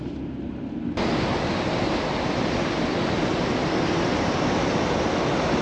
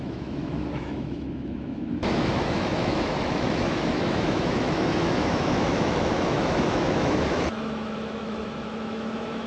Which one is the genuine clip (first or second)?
first